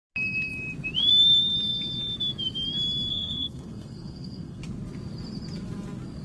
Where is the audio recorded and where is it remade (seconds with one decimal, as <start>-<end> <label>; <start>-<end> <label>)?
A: 0.0-3.1 recorded; 3.1-4.6 remade; 4.6-6.2 recorded